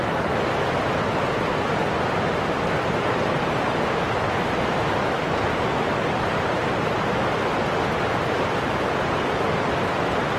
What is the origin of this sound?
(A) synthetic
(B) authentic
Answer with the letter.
B